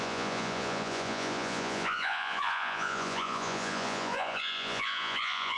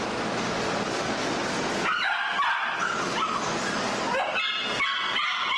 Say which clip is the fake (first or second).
first